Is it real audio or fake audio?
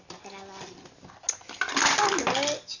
real